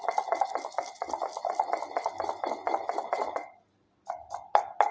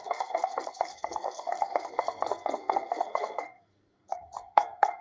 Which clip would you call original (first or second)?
first